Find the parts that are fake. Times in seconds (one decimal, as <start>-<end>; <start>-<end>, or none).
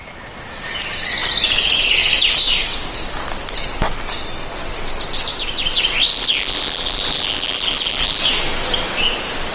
6.1-8.2